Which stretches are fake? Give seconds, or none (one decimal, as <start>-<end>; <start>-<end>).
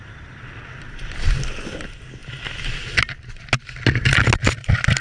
none